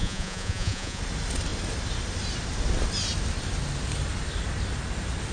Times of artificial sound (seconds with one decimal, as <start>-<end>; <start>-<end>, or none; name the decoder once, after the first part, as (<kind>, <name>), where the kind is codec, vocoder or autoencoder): 0.0-1.0 (vocoder, Vocos)